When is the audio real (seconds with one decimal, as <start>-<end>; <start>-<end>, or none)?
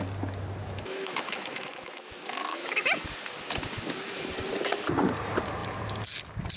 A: 0.0-0.6; 2.9-6.6